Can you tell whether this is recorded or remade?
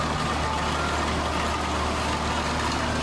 recorded